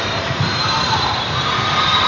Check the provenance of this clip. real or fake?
fake